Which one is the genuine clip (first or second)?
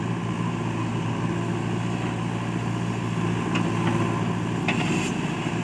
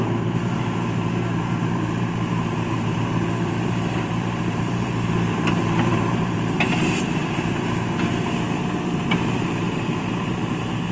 first